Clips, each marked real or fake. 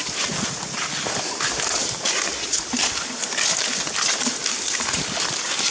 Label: real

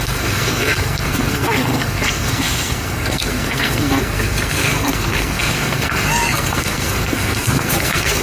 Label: fake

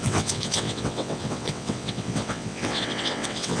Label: fake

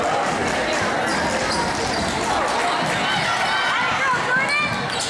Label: real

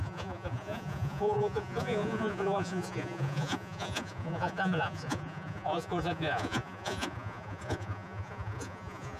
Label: fake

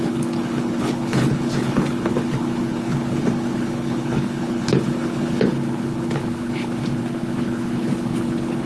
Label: fake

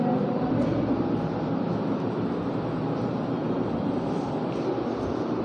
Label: real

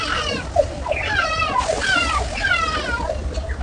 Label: fake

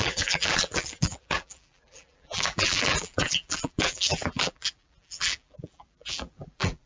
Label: fake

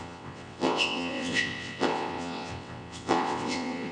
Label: fake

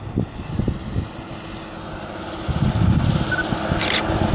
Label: real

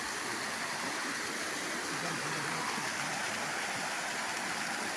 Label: real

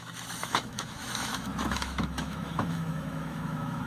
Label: fake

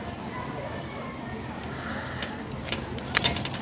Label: real